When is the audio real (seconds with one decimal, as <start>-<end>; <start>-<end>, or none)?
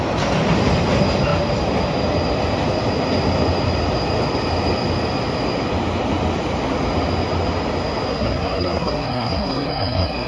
0.0-8.1